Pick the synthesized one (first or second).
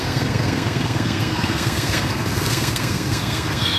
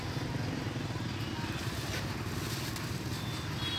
first